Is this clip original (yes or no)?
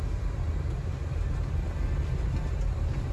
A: yes